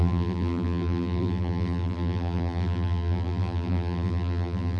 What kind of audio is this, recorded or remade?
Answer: remade